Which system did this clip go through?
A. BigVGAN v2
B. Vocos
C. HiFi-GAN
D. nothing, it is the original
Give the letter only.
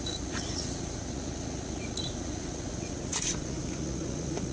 B